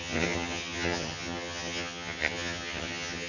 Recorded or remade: remade